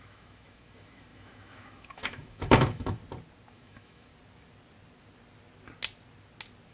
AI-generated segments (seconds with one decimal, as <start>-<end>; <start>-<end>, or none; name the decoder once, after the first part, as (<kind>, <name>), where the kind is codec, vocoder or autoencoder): 0.0-3.0 (autoencoder, DAC-VAE); 3.5-4.1